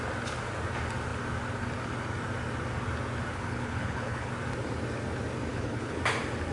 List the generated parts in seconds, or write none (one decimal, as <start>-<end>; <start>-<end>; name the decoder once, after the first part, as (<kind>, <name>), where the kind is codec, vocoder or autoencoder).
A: 3.3-4.3 (codec, HILCodec); 5.5-6.0